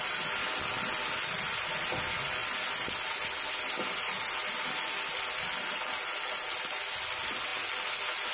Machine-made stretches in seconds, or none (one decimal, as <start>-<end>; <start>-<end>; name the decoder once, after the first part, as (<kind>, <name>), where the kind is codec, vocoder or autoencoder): none